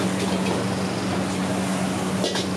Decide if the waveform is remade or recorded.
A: recorded